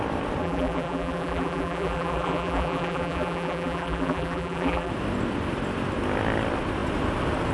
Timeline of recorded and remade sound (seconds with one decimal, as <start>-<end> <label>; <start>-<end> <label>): 0.0-0.4 recorded; 0.4-4.9 remade; 4.9-7.5 recorded